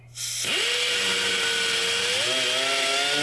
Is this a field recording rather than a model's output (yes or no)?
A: yes